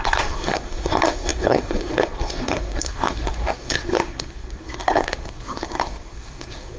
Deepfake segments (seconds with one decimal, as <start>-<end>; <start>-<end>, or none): 0.0-6.8